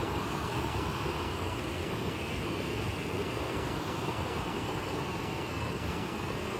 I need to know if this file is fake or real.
fake